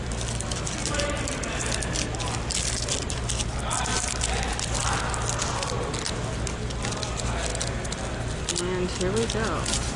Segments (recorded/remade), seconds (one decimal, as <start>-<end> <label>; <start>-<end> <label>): 0.0-10.0 recorded